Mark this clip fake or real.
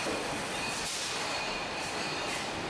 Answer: real